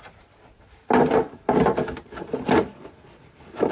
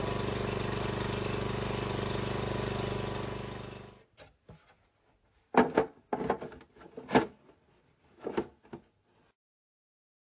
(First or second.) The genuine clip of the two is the second